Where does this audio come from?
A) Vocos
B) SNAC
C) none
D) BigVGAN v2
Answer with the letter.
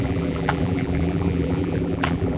D